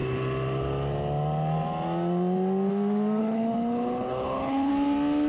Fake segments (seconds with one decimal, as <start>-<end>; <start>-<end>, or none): 3.2-4.7